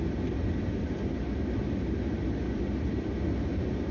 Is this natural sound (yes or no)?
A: yes